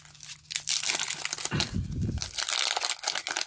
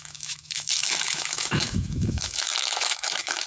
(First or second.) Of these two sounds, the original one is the first